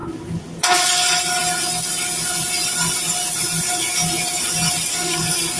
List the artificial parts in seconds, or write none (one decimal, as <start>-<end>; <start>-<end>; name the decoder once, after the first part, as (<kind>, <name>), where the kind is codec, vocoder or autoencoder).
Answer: 4.9-5.6 (codec, SNAC)